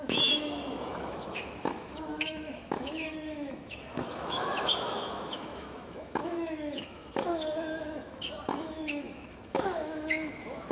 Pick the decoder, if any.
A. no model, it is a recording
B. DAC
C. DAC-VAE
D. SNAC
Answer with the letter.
C